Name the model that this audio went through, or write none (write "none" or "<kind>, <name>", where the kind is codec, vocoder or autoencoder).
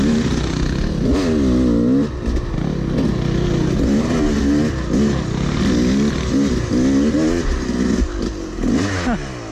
none